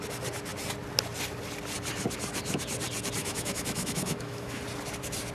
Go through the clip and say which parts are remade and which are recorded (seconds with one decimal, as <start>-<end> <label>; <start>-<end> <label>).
0.0-3.2 recorded; 3.2-4.6 remade; 4.6-5.3 recorded